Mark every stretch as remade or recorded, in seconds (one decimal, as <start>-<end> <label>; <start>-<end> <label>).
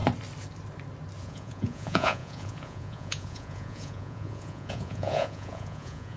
0.0-1.2 recorded; 1.2-6.2 remade